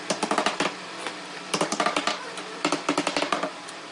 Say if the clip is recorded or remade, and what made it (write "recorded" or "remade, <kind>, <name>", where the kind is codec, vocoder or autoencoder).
recorded